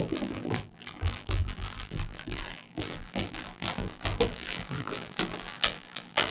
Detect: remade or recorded remade